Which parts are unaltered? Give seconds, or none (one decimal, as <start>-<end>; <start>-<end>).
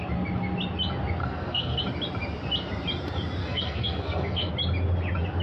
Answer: 0.0-1.2; 1.8-3.4; 4.5-5.4